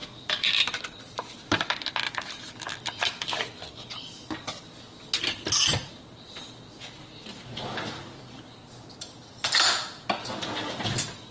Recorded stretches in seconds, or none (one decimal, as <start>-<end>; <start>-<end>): 0.0-11.3